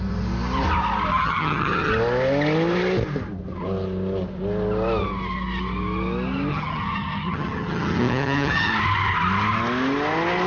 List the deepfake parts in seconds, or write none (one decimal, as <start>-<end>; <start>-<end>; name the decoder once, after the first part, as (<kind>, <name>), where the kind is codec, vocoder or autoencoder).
1.1-1.9 (vocoder, HiFi-GAN); 6.5-8.7